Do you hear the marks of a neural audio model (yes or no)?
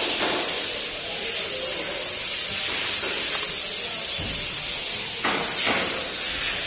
no